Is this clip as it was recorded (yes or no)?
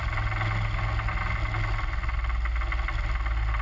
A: yes